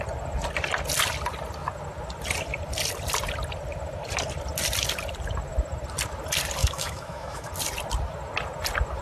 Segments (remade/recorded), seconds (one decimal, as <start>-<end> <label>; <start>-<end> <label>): 0.0-6.6 recorded; 6.6-7.5 remade; 7.5-9.0 recorded